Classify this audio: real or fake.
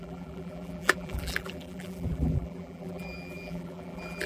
fake